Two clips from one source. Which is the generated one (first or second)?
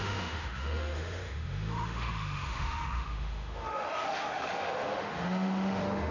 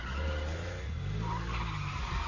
first